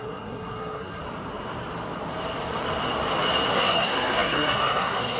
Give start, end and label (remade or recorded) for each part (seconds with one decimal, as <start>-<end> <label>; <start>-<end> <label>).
0.0-1.0 remade; 1.0-3.5 recorded; 3.5-5.2 remade